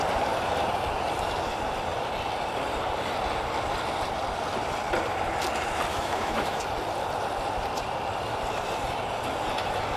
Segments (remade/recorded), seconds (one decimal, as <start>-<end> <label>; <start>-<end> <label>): 0.0-5.9 recorded; 5.9-6.6 remade; 6.6-10.0 recorded